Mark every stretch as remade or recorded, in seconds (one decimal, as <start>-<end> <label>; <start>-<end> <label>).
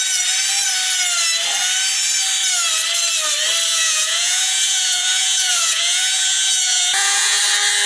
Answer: 0.0-3.7 recorded; 3.7-7.4 remade; 7.4-7.9 recorded